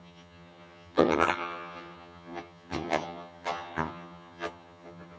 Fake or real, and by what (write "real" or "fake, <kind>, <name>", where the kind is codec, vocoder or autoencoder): fake, vocoder, HiFi-GAN